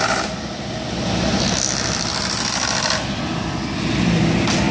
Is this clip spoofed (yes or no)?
no